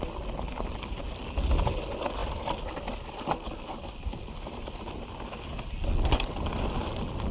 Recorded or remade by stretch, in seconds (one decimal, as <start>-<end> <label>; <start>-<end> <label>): 0.0-7.3 recorded